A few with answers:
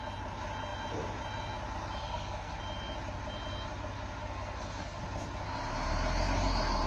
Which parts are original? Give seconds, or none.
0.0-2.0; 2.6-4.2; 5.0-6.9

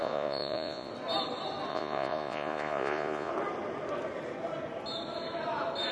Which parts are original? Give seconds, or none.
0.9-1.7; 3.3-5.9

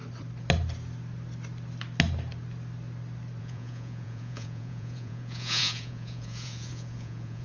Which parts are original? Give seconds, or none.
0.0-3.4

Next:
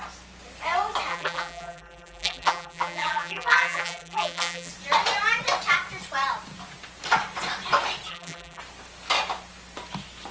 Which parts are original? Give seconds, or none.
0.0-1.1; 4.7-8.1; 8.6-10.3

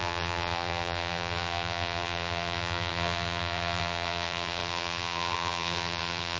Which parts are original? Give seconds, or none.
none